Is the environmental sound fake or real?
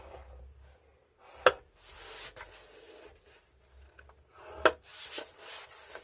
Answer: real